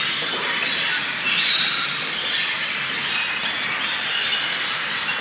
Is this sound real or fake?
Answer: real